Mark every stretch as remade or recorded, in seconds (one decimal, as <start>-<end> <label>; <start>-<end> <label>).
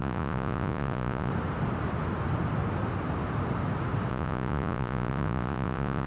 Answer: 0.0-1.3 remade; 1.3-4.1 recorded; 4.1-6.1 remade